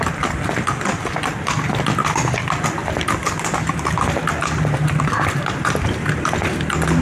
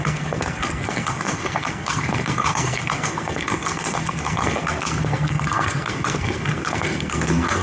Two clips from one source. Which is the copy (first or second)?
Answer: second